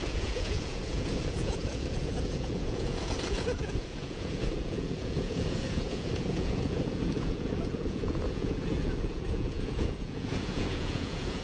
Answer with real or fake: fake